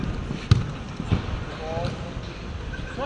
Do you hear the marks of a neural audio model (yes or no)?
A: no